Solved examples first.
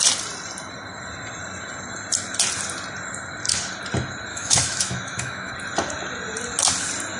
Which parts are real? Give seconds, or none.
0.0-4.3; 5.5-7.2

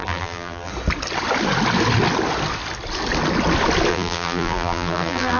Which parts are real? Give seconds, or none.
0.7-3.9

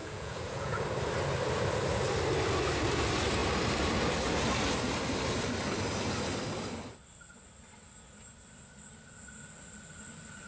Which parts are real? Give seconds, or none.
0.8-10.5